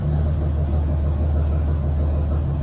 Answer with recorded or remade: recorded